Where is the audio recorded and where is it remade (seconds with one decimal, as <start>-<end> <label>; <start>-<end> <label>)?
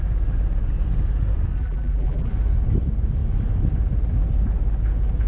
0.0-1.6 recorded; 1.6-2.3 remade; 2.3-5.3 recorded